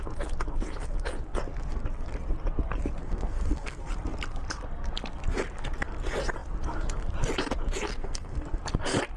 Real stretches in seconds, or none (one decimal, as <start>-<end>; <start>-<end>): 0.0-3.0; 3.8-7.9; 8.6-9.2